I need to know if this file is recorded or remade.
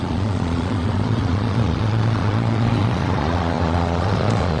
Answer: remade